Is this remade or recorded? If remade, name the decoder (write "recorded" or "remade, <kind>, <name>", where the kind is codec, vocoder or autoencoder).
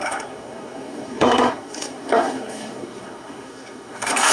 remade, codec, SNAC